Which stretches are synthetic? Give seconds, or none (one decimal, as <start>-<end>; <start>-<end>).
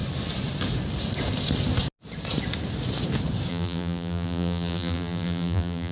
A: 3.5-5.9